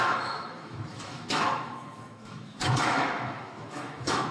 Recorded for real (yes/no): no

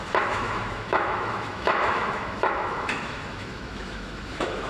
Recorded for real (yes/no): no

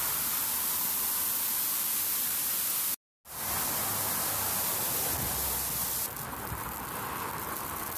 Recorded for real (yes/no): yes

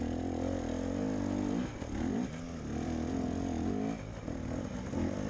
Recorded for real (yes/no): yes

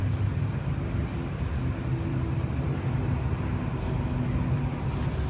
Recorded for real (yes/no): yes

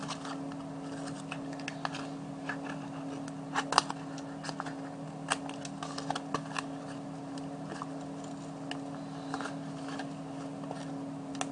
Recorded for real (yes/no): yes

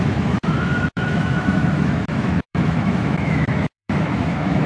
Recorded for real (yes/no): no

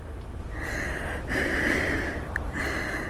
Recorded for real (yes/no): yes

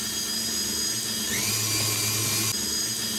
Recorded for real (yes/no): yes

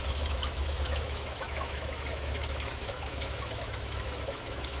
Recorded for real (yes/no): no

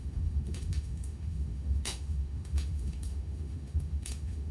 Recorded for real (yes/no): no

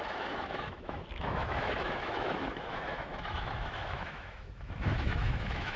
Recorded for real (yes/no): no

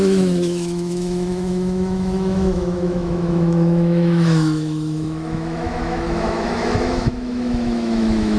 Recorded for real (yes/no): no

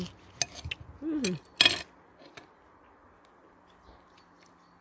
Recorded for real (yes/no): yes